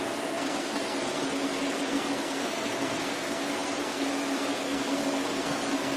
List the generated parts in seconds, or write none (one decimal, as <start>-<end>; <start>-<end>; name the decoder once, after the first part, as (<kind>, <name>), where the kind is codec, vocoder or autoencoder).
0.0-6.0 (codec, SNAC)